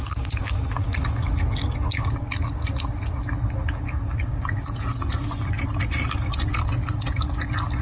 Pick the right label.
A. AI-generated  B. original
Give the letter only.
B